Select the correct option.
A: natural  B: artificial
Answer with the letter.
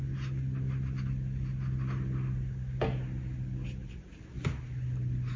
A